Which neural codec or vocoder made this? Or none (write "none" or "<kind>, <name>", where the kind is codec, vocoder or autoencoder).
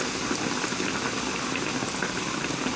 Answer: none